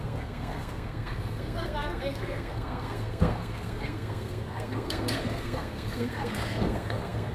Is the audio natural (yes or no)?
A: no